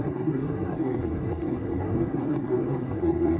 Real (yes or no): no